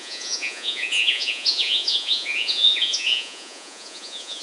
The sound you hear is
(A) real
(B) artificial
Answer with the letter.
B